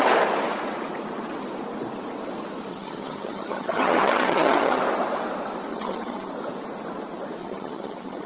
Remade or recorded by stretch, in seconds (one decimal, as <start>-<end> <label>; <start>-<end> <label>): 0.0-2.7 recorded; 2.7-4.8 remade; 4.8-5.7 recorded; 5.7-6.3 remade; 6.3-7.4 recorded; 7.4-8.3 remade